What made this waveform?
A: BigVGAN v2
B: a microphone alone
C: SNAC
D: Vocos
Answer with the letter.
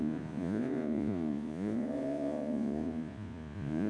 D